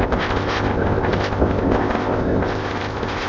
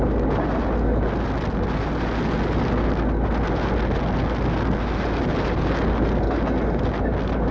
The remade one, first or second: first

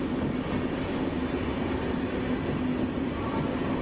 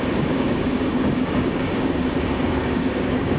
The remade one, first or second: second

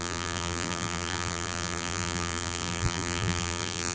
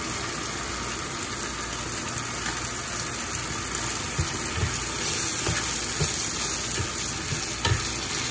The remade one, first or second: first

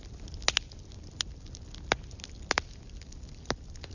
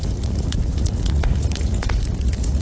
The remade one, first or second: second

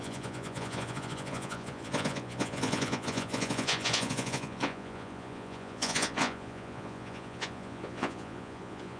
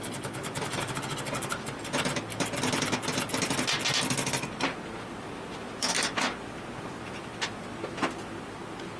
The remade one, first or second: first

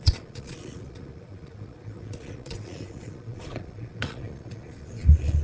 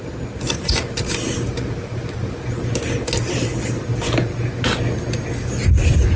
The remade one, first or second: first